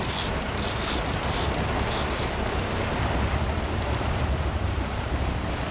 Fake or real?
real